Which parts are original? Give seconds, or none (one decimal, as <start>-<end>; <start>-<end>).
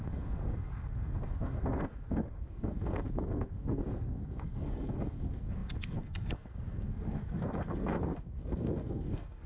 none